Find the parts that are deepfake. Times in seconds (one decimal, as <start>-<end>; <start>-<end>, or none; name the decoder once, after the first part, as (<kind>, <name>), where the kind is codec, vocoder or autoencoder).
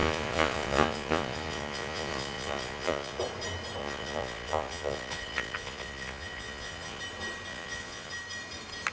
0.0-3.2 (vocoder, Vocos); 3.8-7.0; 7.5-8.1